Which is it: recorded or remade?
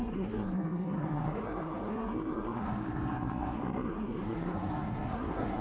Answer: remade